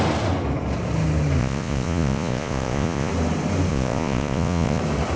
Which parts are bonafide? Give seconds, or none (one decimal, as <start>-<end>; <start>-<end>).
0.0-1.4; 3.1-3.7; 4.8-5.2